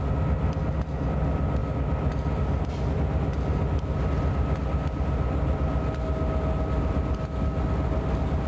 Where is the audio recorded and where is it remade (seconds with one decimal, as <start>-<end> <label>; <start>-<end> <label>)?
0.0-8.5 recorded